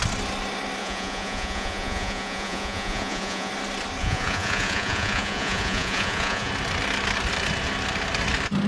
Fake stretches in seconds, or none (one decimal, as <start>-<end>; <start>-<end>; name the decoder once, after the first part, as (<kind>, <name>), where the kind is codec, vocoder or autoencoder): 0.8-3.5 (vocoder, Vocos); 4.0-6.5